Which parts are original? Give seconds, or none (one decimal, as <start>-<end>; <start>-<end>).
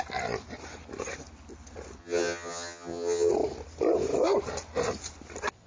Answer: 0.0-2.0; 3.3-5.7